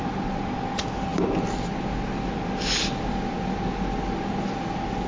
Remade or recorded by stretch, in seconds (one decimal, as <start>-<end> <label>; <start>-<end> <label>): 0.0-5.1 recorded